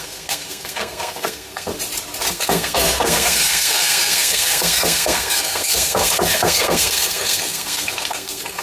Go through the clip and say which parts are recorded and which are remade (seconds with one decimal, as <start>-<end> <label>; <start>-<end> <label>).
0.0-1.7 remade; 1.7-2.3 recorded; 2.3-8.6 remade